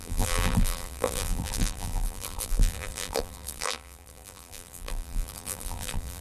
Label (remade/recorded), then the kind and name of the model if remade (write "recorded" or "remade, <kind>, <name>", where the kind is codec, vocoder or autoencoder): remade, vocoder, BigVGAN v2